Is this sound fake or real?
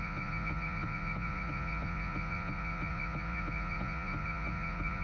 fake